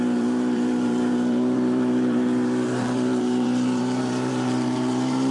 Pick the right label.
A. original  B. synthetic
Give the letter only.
B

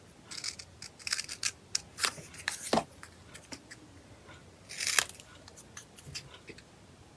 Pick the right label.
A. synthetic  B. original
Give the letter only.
B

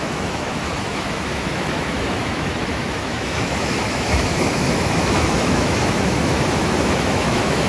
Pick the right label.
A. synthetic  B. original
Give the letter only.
A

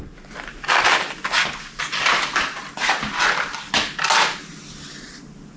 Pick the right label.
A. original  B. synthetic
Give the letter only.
A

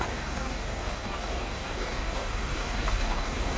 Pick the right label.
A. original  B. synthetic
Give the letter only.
B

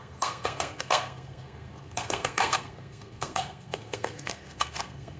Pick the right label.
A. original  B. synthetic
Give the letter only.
B